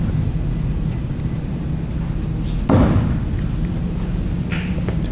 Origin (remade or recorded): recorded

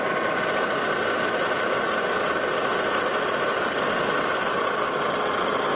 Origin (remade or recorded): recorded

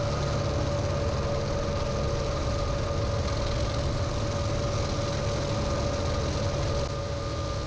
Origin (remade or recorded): recorded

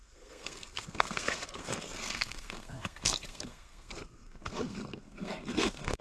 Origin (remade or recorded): remade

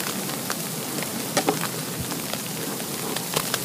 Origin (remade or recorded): recorded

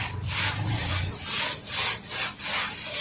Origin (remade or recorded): recorded